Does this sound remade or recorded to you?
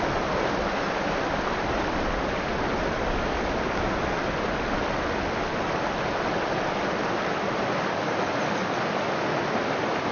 recorded